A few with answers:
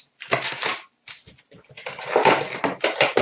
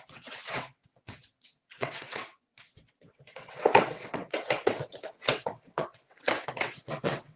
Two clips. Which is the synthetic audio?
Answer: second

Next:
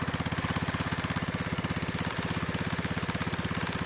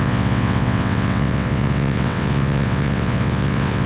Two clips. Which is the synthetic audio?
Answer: second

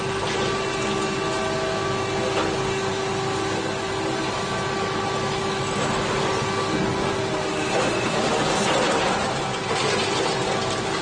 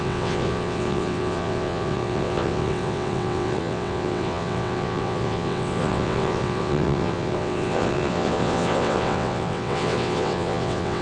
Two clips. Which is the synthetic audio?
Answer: second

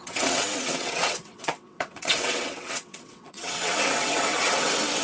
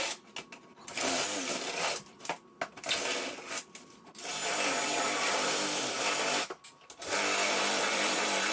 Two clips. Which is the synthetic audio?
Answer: first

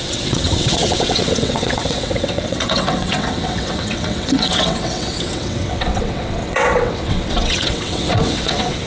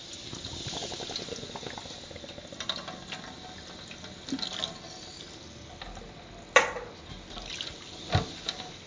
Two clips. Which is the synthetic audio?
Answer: first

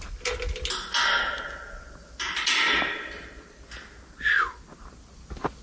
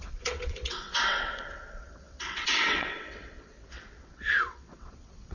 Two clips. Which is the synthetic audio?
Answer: second